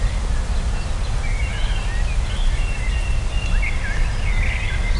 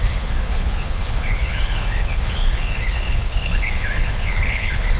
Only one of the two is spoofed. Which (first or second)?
second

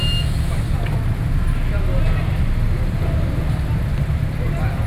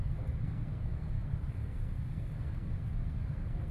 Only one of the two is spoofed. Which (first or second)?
second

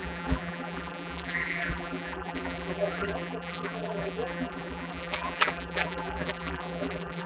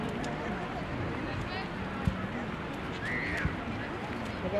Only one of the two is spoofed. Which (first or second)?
first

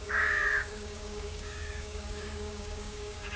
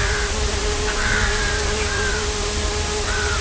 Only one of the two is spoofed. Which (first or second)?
first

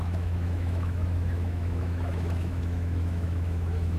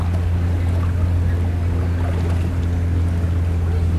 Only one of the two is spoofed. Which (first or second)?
first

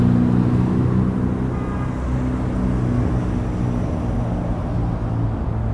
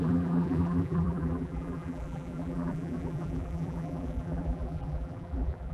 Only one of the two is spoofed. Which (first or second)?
second